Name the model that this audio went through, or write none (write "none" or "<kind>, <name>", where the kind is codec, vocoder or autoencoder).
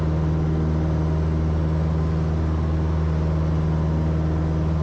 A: none